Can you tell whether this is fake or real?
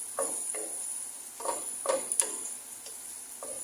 real